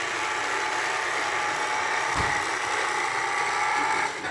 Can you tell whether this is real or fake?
real